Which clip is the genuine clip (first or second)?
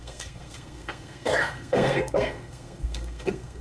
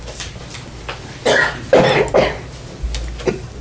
second